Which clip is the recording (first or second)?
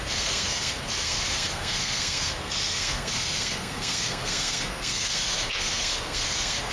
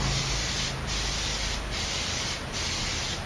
second